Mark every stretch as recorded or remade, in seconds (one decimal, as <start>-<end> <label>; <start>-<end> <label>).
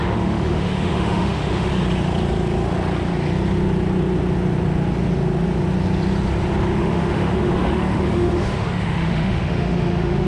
0.0-1.7 remade; 1.7-6.7 recorded; 6.7-10.3 remade